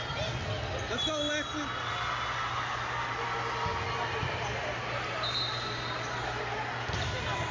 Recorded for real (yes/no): yes